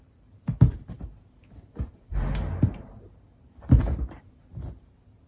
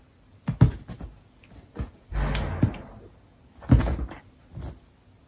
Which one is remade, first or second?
first